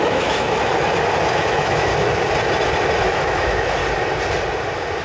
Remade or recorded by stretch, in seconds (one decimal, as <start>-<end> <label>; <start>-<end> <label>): 0.0-0.7 remade; 0.7-1.3 recorded; 1.3-1.9 remade; 1.9-3.0 recorded; 3.0-3.8 remade; 3.8-5.0 recorded

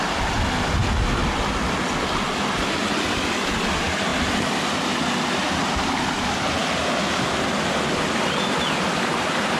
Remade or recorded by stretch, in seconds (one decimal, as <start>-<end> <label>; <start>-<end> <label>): 0.0-9.6 recorded